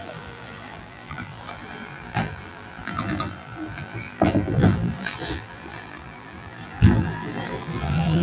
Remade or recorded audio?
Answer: remade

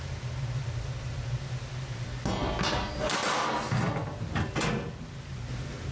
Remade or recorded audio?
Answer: recorded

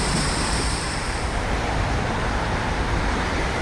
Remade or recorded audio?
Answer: remade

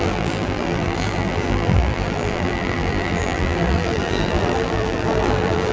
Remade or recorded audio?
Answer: remade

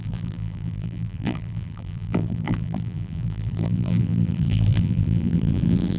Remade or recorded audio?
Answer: remade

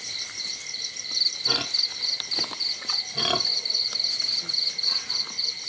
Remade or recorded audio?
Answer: remade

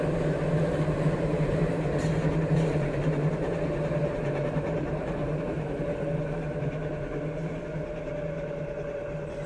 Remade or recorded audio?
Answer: remade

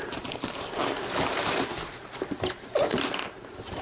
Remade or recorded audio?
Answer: remade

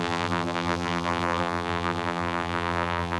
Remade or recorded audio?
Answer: remade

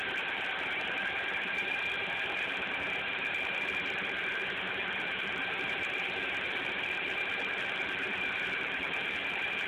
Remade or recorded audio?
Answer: remade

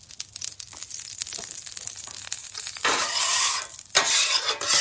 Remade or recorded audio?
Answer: remade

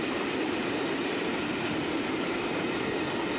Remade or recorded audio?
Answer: remade